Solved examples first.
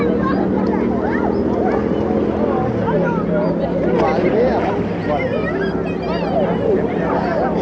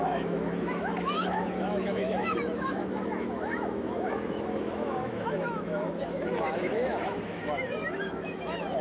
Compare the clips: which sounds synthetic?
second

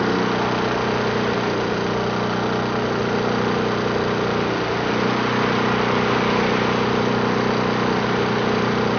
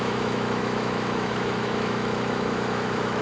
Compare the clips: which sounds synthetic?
second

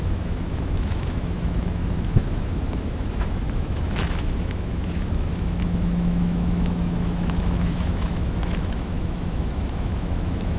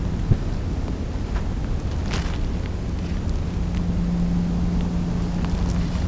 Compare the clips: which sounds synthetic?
first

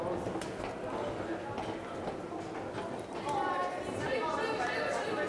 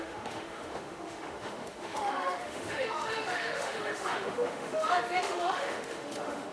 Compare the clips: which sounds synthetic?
second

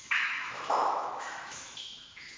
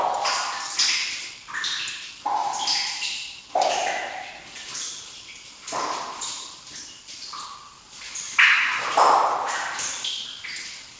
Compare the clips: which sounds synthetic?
first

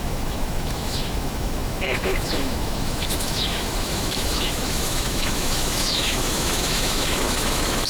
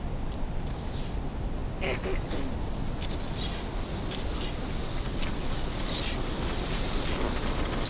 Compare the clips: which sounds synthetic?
first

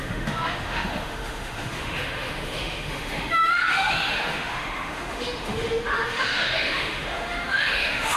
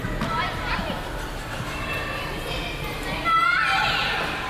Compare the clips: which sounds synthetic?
first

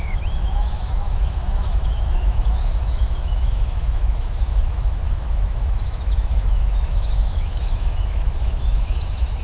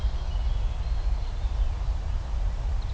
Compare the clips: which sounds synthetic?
first